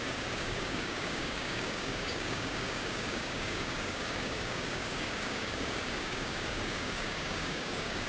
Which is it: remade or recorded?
remade